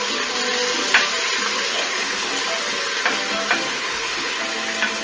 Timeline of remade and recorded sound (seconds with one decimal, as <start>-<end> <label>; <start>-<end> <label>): 0.0-1.7 recorded; 1.7-2.3 remade; 2.3-3.7 recorded; 3.7-4.4 remade; 4.4-5.0 recorded